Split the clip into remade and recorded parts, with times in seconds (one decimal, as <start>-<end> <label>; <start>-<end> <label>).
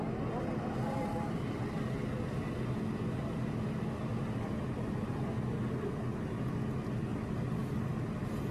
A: 0.0-8.5 recorded